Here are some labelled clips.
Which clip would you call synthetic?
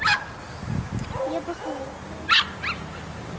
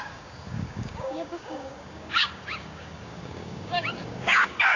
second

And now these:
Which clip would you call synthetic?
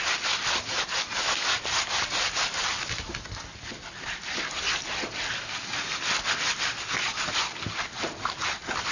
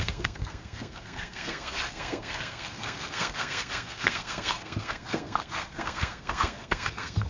second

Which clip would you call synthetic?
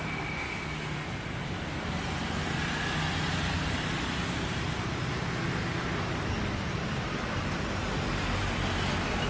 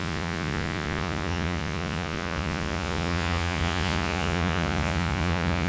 second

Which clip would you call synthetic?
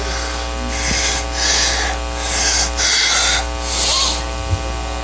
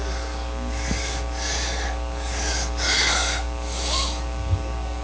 second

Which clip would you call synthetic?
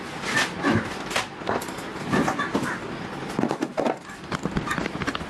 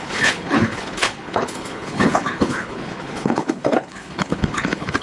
second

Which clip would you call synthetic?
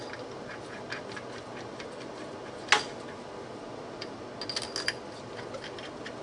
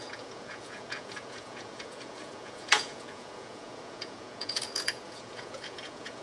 second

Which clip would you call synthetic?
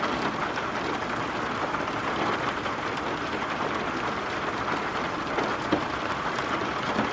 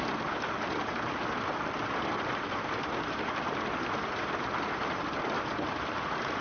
second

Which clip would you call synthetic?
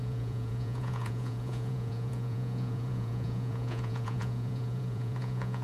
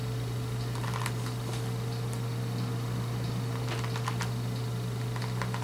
first